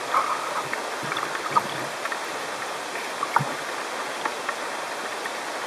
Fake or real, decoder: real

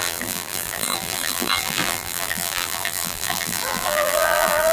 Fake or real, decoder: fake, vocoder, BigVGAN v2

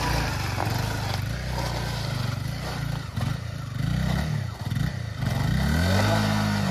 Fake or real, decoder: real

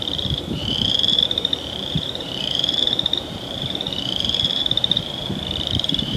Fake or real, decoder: fake, vocoder, BigVGAN v2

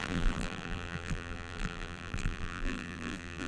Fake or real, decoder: fake, vocoder, BigVGAN v2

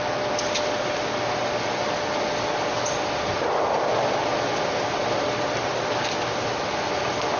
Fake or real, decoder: real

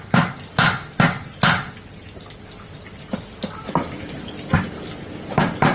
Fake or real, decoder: real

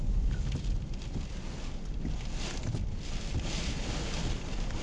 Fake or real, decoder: real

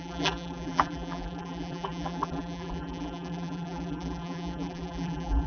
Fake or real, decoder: fake, vocoder, BigVGAN v2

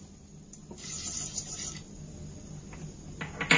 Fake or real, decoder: real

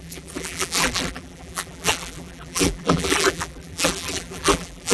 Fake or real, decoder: fake, vocoder, BigVGAN v2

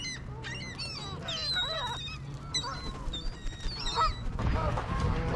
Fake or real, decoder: real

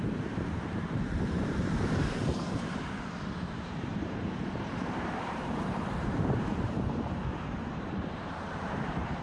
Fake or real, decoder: fake, vocoder, BigVGAN v2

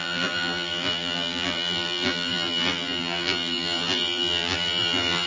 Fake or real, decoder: fake, vocoder, BigVGAN v2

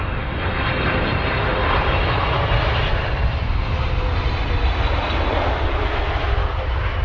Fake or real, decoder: real